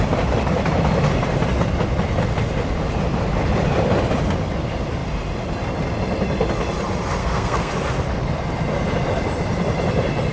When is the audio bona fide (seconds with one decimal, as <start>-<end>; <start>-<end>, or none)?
0.0-7.2; 7.7-10.3